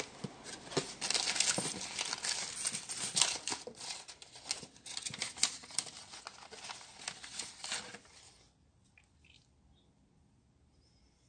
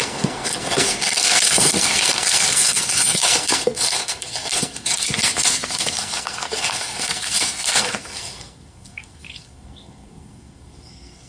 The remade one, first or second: second